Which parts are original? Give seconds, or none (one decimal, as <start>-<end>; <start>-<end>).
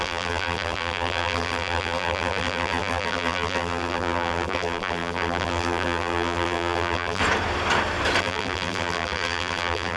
7.2-8.2